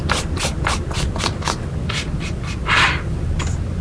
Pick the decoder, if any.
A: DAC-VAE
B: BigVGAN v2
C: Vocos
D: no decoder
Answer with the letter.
D